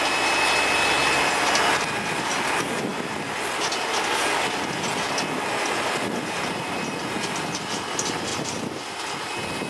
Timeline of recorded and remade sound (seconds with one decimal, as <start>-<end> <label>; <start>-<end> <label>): 0.0-9.7 recorded